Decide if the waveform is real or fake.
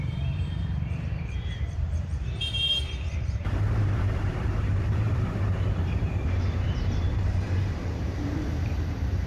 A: fake